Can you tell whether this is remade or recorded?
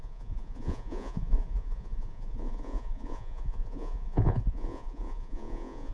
remade